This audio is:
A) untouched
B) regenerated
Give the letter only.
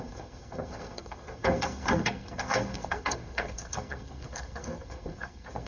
B